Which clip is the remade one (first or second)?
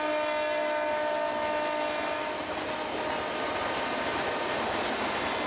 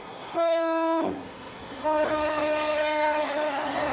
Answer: second